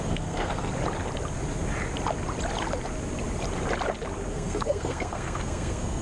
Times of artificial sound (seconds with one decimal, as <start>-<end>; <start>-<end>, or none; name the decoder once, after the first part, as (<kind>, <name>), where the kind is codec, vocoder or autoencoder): 0.0-0.7 (codec, SNAC); 4.3-6.0